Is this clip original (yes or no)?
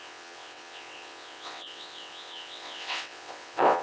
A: no